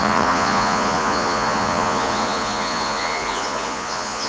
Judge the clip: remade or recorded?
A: remade